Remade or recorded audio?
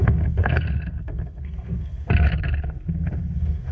remade